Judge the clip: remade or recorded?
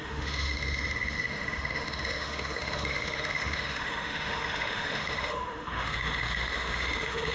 remade